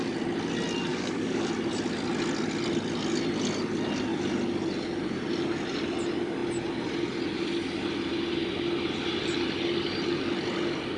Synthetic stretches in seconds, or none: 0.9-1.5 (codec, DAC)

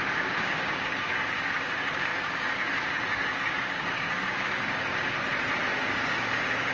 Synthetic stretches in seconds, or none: 0.0-4.9 (codec, DAC); 5.7-6.7

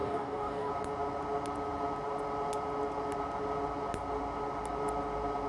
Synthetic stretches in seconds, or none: 0.0-0.7 (codec, DAC)

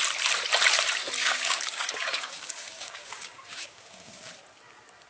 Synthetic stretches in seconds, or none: 1.2-4.3 (codec, DAC)